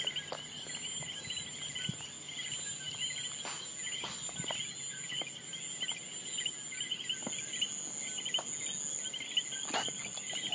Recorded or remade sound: recorded